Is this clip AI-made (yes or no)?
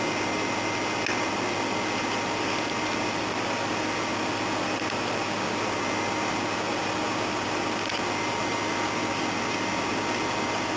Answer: no